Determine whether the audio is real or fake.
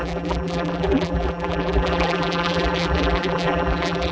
fake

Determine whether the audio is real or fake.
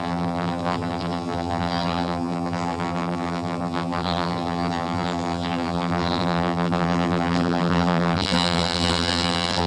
fake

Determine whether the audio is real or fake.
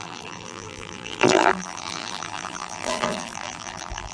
fake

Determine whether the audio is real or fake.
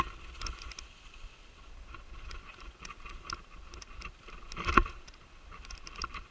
fake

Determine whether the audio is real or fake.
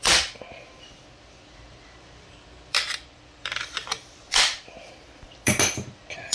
fake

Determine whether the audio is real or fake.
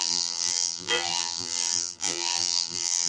fake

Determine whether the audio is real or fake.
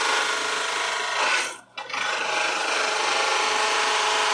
real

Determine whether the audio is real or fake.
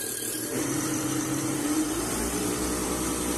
fake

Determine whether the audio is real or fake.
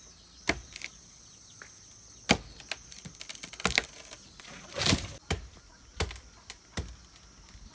real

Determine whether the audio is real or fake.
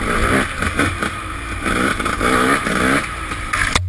real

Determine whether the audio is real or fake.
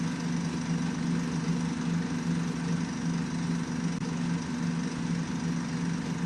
real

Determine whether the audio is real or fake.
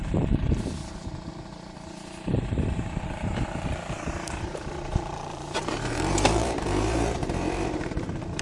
fake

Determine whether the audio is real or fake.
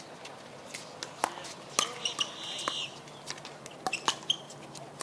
real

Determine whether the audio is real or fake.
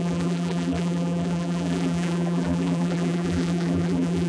fake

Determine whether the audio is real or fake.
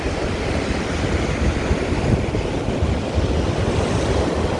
real